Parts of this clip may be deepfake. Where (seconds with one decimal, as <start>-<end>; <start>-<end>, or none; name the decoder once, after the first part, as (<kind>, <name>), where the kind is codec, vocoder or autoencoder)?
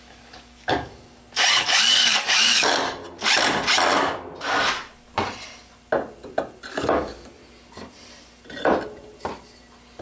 0.0-0.9 (codec, DAC); 1.5-3.0; 6.7-7.4